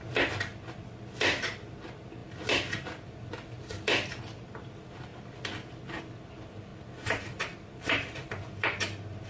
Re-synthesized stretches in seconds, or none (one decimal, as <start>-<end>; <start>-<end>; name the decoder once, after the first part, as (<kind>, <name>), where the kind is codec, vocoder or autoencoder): 0.0-6.7 (vocoder, BigVGAN v2); 7.2-9.3